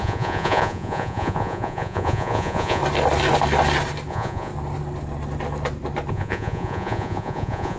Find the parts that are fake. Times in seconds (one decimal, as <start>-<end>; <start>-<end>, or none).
0.0-2.8; 4.1-4.5; 6.1-7.8